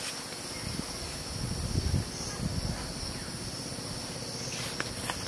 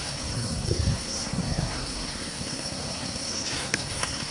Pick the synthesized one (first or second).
second